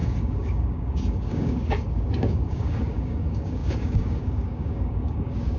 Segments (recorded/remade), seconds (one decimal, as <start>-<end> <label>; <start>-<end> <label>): 0.0-5.6 remade